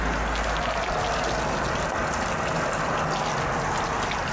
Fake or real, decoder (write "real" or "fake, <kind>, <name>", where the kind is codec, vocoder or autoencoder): real